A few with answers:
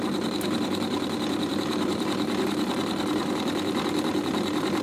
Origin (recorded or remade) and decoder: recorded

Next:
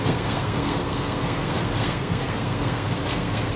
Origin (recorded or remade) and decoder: remade, codec, SNAC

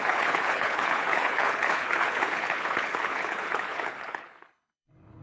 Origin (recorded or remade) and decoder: remade, codec, HILCodec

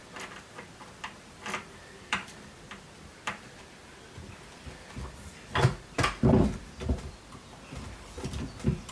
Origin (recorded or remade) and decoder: remade, vocoder, BigVGAN v2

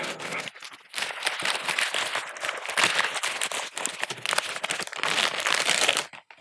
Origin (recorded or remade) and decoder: recorded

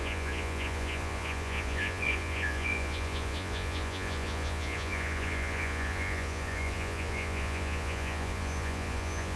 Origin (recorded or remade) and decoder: remade, vocoder, Vocos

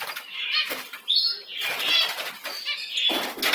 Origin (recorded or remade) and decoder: recorded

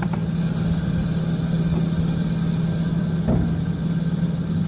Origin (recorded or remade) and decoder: recorded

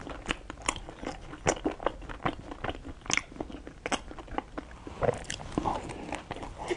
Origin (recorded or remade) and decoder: recorded